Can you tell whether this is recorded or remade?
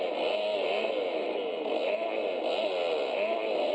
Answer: recorded